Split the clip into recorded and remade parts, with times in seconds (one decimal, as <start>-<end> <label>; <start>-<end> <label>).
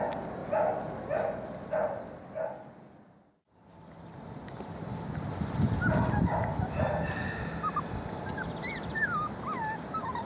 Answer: 0.0-10.3 recorded